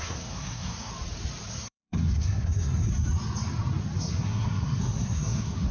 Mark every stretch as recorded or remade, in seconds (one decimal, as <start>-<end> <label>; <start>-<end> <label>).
0.0-0.9 remade; 0.9-1.5 recorded; 1.5-2.9 remade; 2.9-4.0 recorded; 4.0-5.7 remade